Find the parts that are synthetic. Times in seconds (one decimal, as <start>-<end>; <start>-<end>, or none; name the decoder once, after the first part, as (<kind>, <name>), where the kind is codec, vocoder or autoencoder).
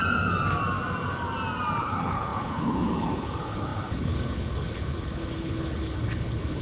1.8-6.6 (codec, HILCodec)